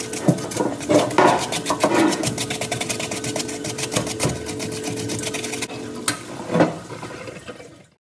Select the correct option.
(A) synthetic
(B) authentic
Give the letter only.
B